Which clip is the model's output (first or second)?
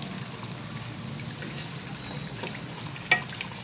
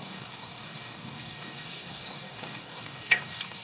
second